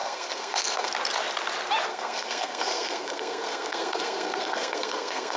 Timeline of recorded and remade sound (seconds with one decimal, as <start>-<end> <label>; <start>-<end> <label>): 0.0-0.9 remade; 0.9-1.9 recorded; 1.9-5.4 remade

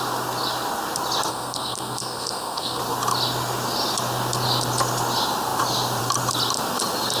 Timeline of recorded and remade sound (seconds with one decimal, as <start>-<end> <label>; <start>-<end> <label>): 0.0-1.3 recorded; 1.3-2.8 remade; 2.8-7.2 recorded

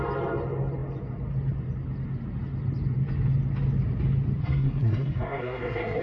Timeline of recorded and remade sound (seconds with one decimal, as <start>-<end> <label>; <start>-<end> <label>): 0.0-4.4 recorded; 4.4-6.0 remade

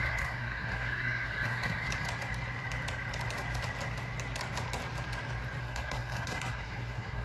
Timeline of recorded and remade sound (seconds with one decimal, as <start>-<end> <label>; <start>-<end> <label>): 0.0-1.9 remade; 1.9-5.6 recorded; 5.6-7.2 remade